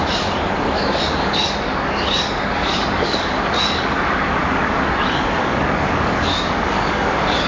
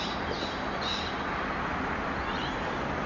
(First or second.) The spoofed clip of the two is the first